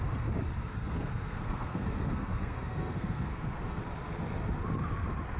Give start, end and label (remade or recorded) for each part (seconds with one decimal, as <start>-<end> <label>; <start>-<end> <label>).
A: 0.0-0.6 recorded; 0.6-3.8 remade; 3.8-5.4 recorded